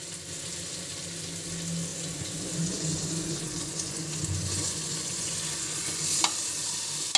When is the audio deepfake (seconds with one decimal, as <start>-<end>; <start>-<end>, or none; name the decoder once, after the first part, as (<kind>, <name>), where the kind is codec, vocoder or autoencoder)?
1.9-6.0 (vocoder, Vocos)